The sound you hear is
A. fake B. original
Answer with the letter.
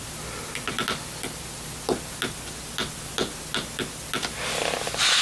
B